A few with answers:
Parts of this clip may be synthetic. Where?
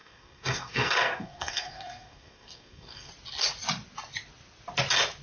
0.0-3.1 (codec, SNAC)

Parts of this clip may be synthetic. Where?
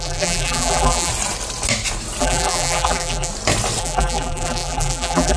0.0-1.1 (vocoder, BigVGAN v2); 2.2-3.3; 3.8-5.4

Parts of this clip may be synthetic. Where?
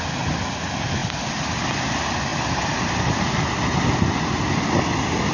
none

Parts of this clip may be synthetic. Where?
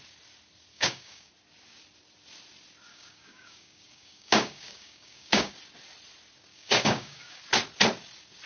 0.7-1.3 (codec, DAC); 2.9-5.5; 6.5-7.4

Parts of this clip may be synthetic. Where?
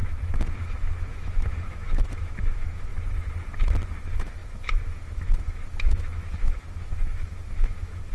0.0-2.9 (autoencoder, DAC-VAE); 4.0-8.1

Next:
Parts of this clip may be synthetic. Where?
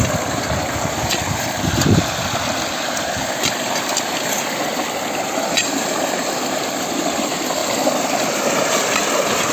none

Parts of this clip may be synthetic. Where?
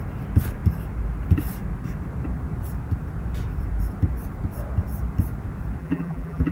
5.8-6.5 (vocoder, BigVGAN v2)